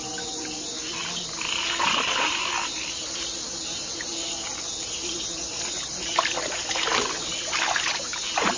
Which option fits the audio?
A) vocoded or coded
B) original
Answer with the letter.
B